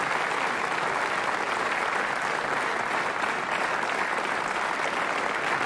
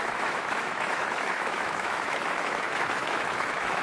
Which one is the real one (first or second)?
first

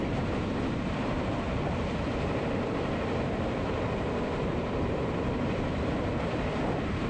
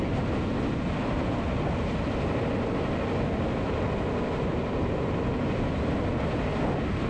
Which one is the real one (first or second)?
second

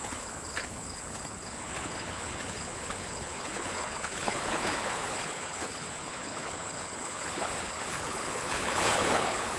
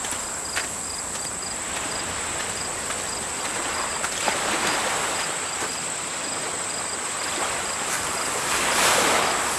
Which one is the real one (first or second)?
second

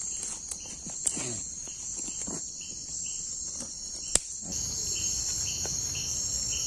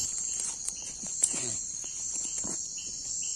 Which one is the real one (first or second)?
first